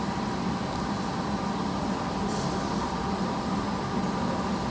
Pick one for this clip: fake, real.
real